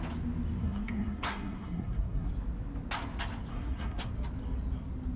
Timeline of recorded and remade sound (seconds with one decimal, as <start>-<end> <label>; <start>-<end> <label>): 0.0-0.6 recorded; 0.6-2.3 remade; 2.3-3.5 recorded; 3.5-4.1 remade; 4.1-5.2 recorded